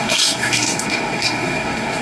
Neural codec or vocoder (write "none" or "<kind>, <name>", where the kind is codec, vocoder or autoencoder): codec, SNAC